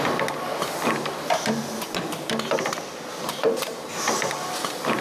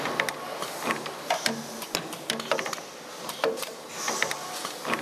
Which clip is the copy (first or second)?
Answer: first